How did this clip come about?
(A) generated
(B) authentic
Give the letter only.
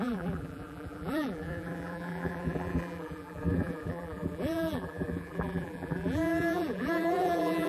A